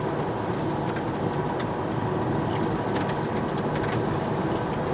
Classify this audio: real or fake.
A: real